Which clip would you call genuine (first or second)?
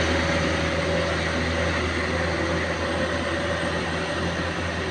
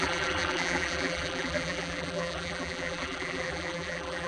first